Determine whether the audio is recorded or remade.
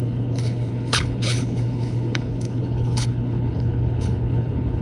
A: remade